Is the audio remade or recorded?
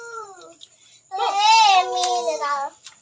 remade